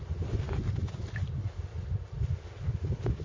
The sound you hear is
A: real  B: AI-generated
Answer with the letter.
A